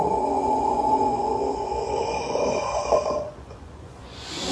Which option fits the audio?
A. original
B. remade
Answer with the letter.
B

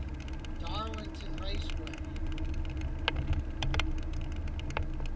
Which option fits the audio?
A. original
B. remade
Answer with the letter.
A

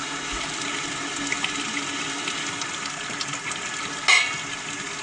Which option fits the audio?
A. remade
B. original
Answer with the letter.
B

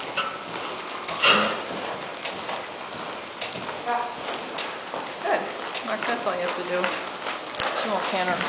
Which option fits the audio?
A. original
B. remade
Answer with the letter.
A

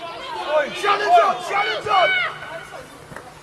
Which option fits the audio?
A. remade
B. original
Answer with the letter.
B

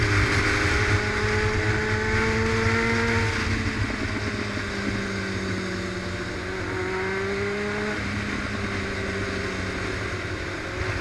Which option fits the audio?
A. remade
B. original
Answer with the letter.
B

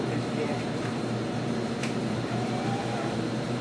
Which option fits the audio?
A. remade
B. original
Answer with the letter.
A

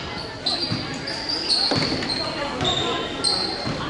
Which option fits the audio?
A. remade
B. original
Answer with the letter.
B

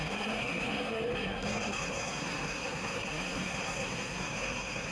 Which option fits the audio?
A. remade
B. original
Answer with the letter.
A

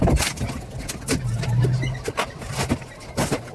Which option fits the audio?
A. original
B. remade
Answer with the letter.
A